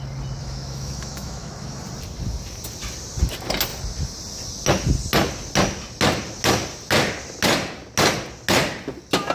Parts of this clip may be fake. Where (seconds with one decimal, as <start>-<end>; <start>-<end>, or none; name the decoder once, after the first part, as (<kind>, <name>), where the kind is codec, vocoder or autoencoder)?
0.4-1.8 (autoencoder, DAC-VAE)